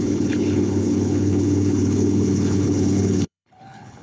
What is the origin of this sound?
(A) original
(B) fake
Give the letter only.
B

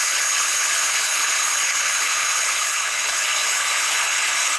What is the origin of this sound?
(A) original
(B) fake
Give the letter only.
B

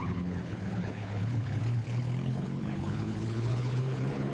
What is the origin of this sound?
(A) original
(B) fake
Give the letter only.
B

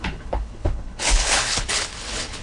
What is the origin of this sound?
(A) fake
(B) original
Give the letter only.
A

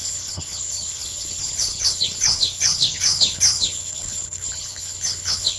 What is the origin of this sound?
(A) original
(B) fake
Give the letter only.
B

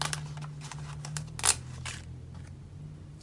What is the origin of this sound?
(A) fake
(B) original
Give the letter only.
B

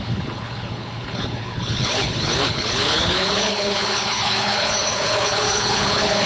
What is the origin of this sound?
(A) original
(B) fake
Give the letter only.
B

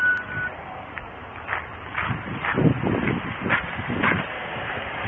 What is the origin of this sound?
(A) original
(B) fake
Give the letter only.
A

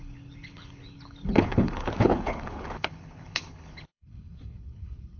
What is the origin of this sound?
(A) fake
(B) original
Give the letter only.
A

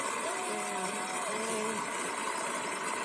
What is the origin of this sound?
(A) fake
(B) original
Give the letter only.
B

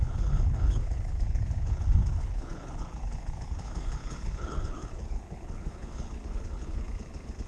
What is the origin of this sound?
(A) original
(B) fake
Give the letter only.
B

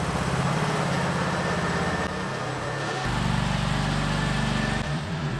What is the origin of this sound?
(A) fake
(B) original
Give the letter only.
B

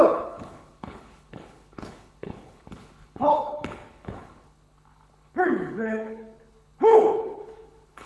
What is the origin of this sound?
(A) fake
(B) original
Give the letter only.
A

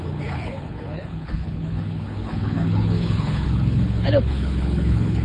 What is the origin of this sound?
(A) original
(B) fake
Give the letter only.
B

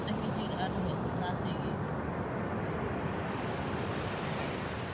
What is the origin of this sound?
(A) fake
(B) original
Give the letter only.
B